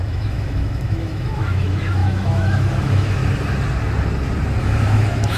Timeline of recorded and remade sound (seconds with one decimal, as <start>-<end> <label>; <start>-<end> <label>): 0.0-3.2 remade; 3.2-4.6 recorded; 4.6-5.4 remade